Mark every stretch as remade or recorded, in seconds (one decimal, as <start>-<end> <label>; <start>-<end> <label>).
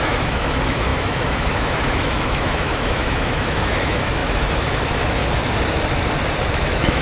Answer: 0.0-5.2 remade; 5.2-6.5 recorded; 6.5-7.0 remade